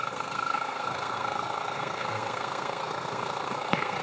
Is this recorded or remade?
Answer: remade